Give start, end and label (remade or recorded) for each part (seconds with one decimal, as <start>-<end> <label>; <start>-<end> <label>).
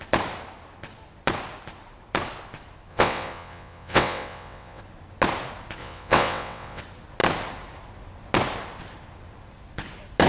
0.0-2.9 recorded; 2.9-4.8 remade; 4.8-5.8 recorded; 5.8-6.8 remade; 6.8-10.3 recorded